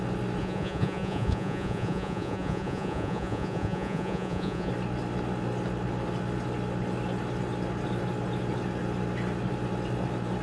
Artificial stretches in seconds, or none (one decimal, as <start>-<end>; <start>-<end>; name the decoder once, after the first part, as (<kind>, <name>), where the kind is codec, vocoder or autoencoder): 0.4-4.7 (vocoder, Vocos)